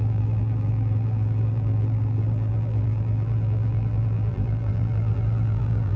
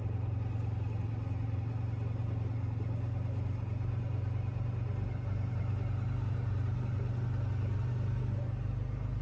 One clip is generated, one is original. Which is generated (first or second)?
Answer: first